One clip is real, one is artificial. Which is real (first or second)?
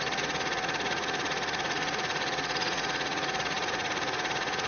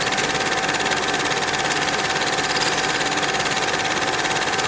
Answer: second